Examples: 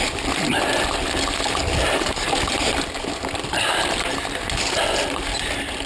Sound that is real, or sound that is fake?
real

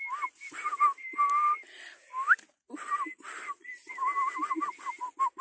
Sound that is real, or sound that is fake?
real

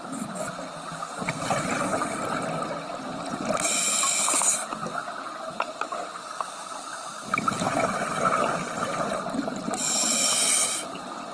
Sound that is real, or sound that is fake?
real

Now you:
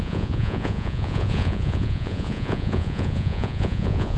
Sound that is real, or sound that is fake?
fake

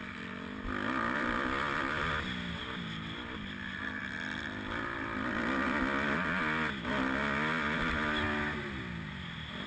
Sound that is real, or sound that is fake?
real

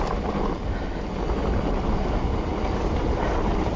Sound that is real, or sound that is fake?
real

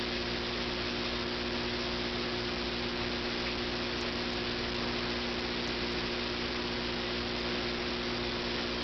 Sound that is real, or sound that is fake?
real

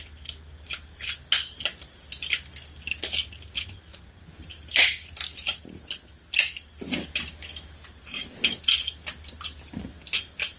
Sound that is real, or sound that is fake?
real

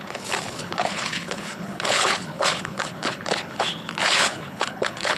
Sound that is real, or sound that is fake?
fake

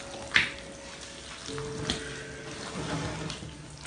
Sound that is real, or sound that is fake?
real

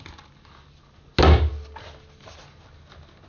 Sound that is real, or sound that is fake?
real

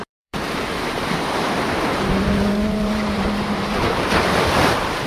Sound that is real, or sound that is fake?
fake